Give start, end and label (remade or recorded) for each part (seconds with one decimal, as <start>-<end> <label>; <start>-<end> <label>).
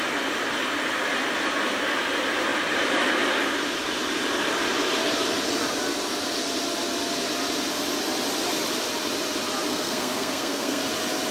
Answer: 0.0-9.7 recorded; 9.7-10.8 remade; 10.8-11.3 recorded